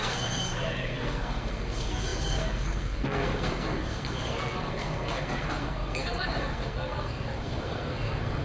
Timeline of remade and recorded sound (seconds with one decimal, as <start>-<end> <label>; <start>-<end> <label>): 0.0-8.4 remade